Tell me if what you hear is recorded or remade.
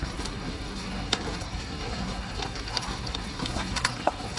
remade